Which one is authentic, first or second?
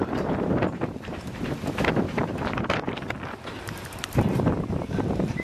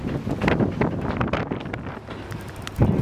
second